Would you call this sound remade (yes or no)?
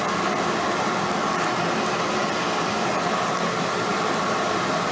no